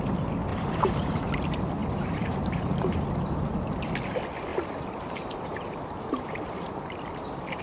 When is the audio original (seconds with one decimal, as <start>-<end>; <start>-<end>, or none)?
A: 0.0-0.5; 1.3-1.8; 3.1-4.5

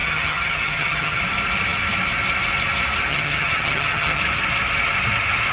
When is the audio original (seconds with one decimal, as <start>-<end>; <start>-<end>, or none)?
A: 1.2-3.1; 4.2-5.5

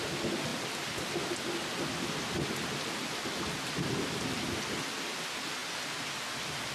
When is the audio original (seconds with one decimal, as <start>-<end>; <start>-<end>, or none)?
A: 0.0-6.7

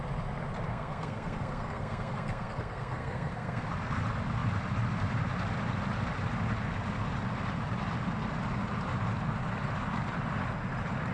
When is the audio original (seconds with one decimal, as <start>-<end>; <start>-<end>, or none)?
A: 0.0-0.7; 3.7-11.1

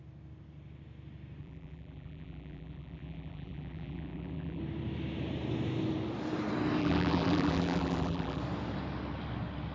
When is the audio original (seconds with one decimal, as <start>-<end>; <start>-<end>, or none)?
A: 0.0-1.4; 4.6-6.8; 8.4-9.7

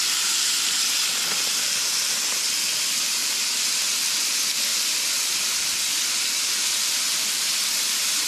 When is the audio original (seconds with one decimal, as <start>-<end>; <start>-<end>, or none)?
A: 0.0-8.3

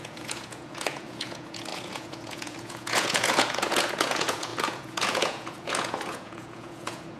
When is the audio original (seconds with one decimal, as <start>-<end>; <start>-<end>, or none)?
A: none

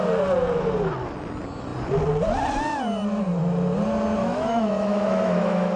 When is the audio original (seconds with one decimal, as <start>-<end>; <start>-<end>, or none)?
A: 0.0-4.2